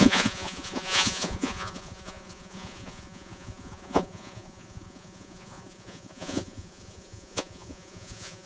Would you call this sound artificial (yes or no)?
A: yes